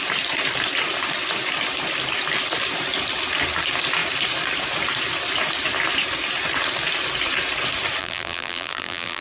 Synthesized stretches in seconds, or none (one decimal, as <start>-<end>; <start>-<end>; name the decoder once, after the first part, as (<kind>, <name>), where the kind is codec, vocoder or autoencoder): 8.0-9.2 (vocoder, BigVGAN v2)